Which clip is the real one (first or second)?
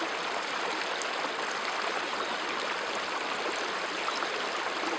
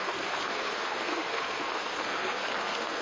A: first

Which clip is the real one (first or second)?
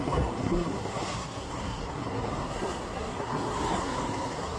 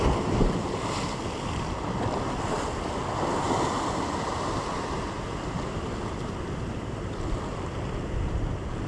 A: second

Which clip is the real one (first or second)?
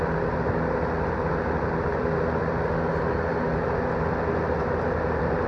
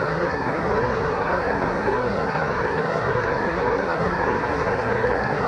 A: first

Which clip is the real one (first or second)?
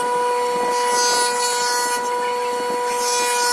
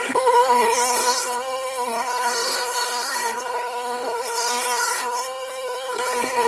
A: first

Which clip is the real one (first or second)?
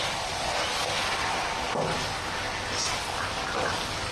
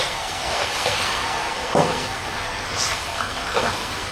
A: first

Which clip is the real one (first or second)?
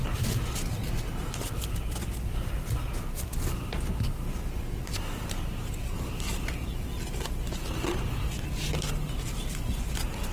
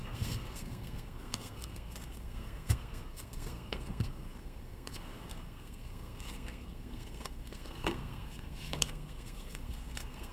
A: first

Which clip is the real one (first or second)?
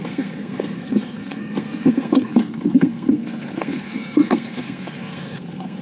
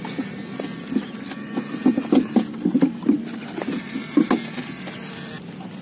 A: second